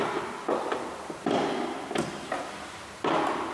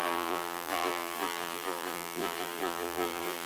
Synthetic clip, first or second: second